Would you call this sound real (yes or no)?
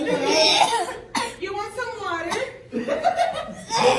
yes